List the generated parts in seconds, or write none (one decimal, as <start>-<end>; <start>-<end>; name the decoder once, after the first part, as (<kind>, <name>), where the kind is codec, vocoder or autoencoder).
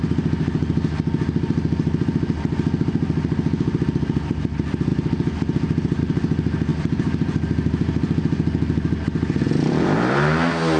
none